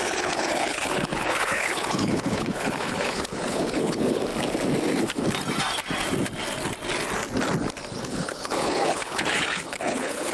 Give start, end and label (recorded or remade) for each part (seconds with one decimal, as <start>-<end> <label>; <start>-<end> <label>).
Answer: 0.0-4.3 remade; 4.3-8.0 recorded; 8.0-10.3 remade